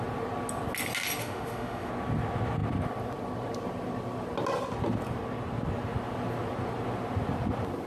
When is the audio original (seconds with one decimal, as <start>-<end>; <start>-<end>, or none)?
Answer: 0.0-1.2; 1.9-7.9